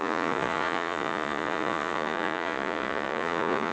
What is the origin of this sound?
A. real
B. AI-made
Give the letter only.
B